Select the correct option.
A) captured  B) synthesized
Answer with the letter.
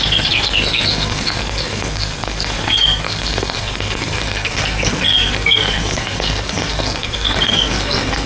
B